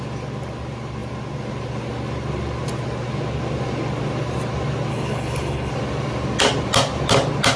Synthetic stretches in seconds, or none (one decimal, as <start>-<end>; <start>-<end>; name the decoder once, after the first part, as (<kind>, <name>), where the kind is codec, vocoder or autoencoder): 4.9-5.7 (codec, HILCodec)